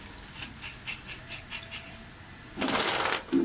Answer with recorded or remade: recorded